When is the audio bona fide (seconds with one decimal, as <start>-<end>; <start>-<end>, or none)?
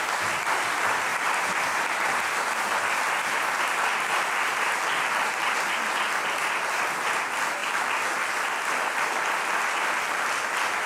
0.0-10.9